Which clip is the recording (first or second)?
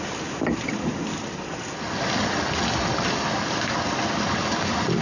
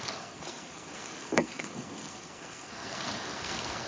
first